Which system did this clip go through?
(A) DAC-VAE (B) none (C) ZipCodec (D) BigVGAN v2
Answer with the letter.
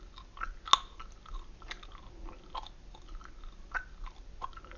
B